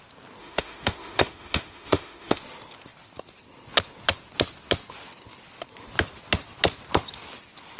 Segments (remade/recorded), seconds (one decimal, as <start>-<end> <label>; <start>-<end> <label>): 0.0-0.4 recorded; 0.4-2.4 remade; 2.4-7.8 recorded